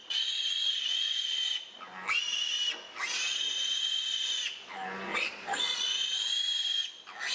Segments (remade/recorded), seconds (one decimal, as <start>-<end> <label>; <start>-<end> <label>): 0.0-1.1 remade; 1.1-5.1 recorded; 5.1-6.3 remade; 6.3-7.3 recorded